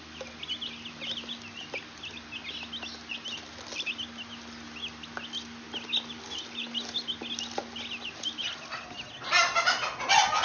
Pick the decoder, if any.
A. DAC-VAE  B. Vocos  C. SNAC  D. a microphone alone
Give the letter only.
D